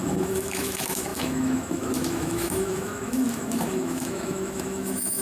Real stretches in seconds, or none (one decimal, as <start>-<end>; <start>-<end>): none